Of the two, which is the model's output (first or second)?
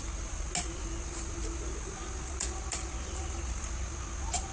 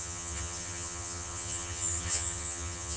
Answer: second